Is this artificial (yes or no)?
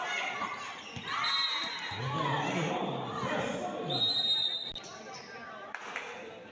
no